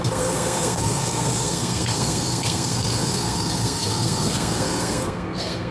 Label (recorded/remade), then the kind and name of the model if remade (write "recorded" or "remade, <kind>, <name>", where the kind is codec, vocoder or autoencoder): remade, codec, SNAC